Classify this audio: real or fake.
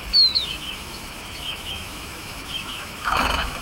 fake